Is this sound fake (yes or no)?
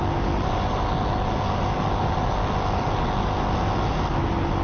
no